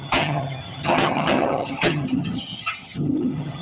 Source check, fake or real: fake